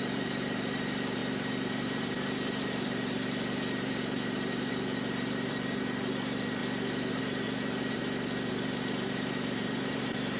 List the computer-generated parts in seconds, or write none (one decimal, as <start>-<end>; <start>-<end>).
0.0-6.6; 7.2-8.0; 8.5-10.4